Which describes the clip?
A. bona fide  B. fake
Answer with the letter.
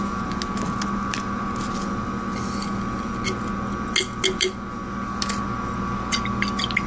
A